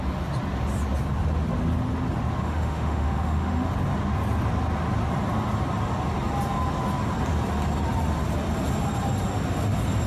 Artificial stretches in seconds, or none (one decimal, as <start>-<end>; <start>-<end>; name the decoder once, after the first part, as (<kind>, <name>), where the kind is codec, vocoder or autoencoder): 2.4-3.7 (autoencoder, DAC-VAE)